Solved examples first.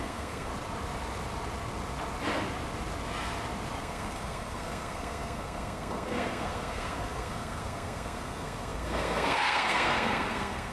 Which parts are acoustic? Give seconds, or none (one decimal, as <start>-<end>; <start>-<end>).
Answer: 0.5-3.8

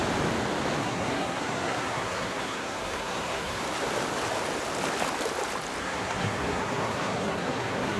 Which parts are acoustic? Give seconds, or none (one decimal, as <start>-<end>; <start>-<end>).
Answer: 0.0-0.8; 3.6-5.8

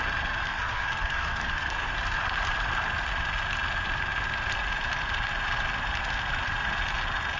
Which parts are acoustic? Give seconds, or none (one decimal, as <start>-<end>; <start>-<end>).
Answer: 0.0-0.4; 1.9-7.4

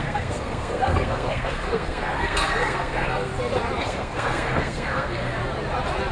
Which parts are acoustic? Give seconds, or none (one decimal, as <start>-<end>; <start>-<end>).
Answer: 3.3-3.8; 5.4-6.1

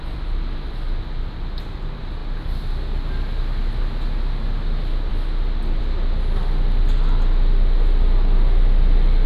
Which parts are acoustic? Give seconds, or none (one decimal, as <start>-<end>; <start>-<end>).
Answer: 0.0-9.3